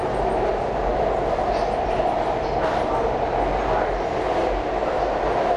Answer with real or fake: real